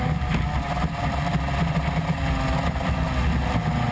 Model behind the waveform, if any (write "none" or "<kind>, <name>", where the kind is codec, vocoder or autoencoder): none